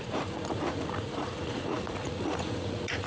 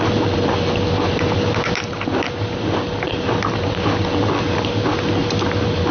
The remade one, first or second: first